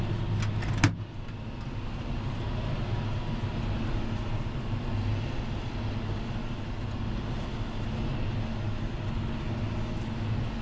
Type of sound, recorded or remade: recorded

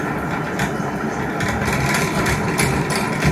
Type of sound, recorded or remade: recorded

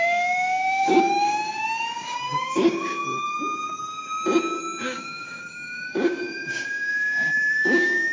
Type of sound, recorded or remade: remade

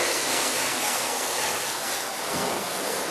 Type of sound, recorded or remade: remade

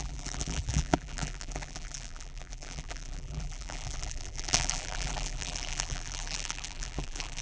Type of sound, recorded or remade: remade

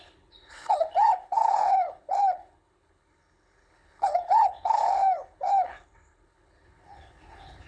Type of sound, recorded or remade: remade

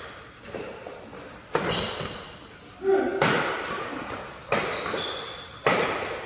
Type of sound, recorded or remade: recorded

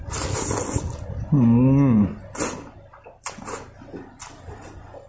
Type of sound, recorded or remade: recorded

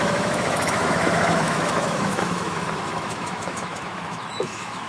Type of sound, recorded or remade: remade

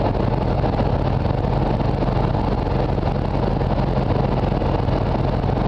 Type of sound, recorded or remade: recorded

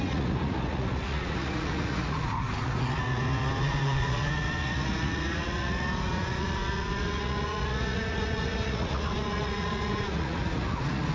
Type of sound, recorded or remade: remade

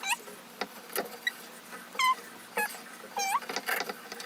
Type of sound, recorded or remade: recorded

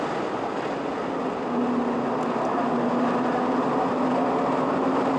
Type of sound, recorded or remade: recorded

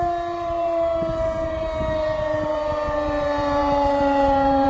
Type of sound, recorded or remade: remade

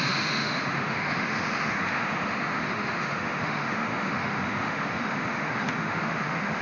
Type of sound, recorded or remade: remade